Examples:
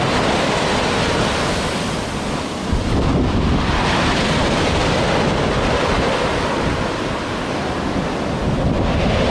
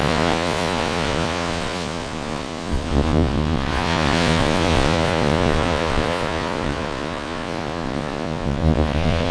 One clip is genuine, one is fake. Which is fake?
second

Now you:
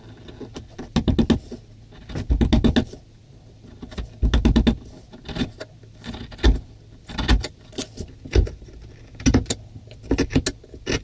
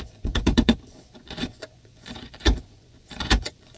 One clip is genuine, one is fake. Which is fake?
second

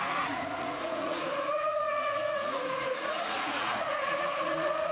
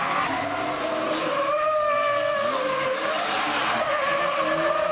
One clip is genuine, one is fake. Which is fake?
first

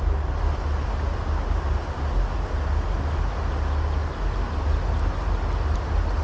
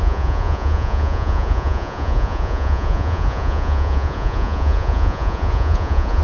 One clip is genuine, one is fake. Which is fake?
second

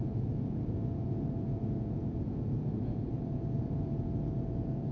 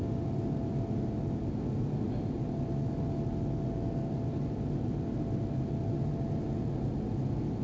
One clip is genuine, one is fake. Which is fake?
first